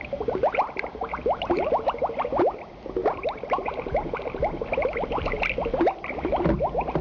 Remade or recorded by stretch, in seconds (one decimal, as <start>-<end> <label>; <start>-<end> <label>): 0.0-3.0 recorded; 3.0-3.7 remade; 3.7-7.0 recorded